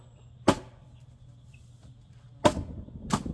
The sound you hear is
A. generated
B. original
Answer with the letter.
B